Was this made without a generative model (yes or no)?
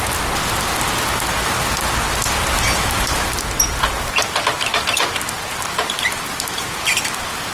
yes